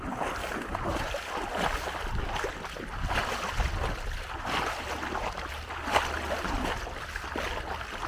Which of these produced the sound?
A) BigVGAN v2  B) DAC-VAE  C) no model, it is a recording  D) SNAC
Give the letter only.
C